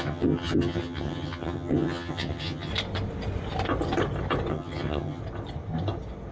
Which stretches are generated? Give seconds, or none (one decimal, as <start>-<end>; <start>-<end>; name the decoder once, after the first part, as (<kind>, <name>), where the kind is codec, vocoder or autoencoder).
0.0-2.7 (vocoder, HiFi-GAN); 4.5-5.2